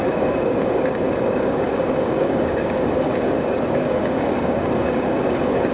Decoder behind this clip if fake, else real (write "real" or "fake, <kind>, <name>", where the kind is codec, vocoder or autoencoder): fake, codec, DAC